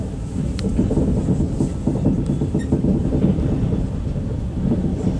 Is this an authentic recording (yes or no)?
yes